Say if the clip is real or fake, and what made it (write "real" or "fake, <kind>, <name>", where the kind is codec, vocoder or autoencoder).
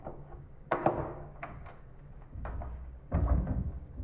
fake, codec, DAC